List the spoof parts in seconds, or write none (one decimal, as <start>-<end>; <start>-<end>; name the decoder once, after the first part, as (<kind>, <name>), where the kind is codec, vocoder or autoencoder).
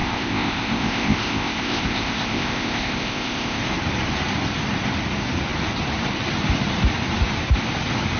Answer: 0.0-3.6 (codec, ZipCodec)